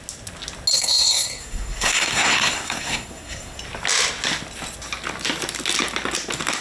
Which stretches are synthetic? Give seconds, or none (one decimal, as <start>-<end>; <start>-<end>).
0.7-3.6